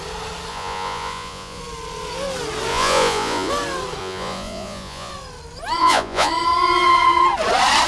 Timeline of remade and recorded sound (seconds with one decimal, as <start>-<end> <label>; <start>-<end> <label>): 0.0-0.5 recorded; 0.5-1.6 remade; 1.6-2.7 recorded; 2.7-3.5 remade; 3.5-4.0 recorded; 4.0-5.1 remade; 5.1-5.8 recorded; 5.8-6.3 remade; 6.3-7.9 recorded